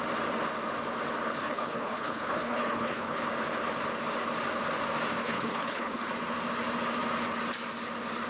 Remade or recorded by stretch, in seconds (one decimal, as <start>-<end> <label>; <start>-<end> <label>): 0.0-1.4 recorded; 1.4-3.2 remade; 3.2-5.2 recorded; 5.2-6.1 remade; 6.1-8.3 recorded